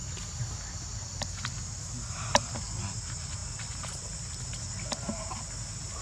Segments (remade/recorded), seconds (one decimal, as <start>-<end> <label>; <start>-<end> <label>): 0.0-6.0 recorded